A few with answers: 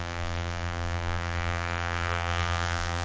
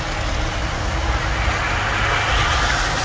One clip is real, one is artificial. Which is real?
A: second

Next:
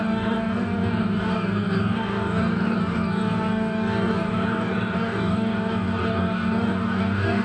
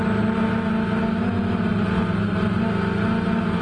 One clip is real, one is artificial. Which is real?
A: second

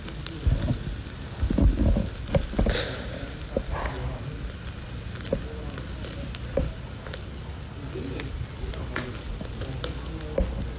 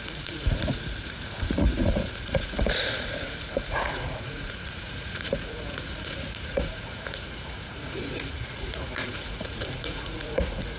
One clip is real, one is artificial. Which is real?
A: first